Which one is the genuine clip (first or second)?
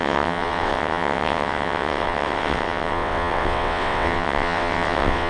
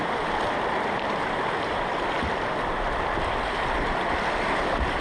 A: second